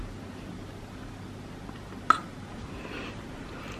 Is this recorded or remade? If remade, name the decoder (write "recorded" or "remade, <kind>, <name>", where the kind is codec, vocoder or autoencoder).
recorded